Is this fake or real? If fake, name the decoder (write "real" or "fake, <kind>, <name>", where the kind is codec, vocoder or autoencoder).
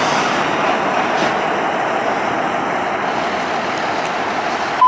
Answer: real